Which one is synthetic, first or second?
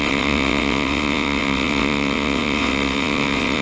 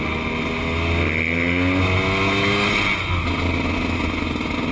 first